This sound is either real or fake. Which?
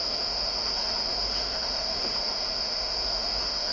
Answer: fake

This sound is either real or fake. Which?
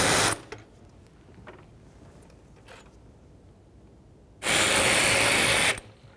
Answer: real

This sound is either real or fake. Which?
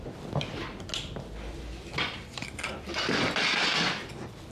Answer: real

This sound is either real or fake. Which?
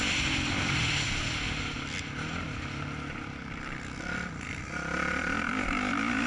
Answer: real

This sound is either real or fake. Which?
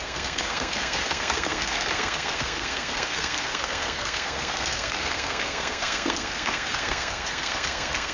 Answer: fake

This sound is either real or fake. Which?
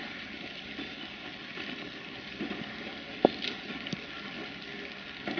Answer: real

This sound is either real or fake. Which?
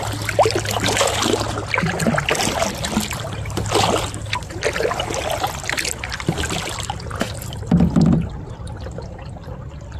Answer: real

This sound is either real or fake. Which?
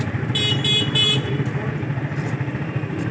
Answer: real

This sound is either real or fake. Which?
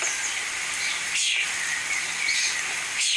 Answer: real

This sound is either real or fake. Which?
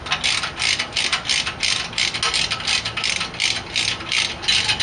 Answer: real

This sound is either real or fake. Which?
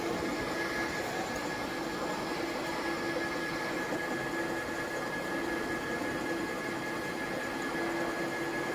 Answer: real